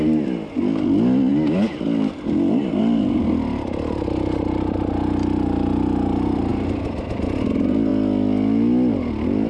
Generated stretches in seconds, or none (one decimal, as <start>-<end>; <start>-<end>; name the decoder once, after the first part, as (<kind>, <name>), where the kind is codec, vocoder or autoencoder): none